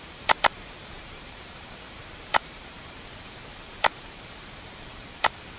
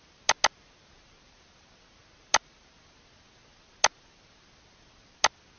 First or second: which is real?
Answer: second